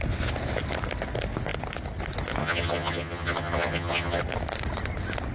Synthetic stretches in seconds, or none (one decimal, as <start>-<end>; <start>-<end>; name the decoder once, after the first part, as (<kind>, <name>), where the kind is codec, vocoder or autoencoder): 2.4-4.2 (vocoder, HiFi-GAN)